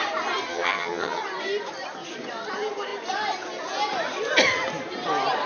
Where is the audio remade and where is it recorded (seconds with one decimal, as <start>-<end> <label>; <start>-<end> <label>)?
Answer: 0.0-0.5 recorded; 0.5-1.2 remade; 1.2-5.5 recorded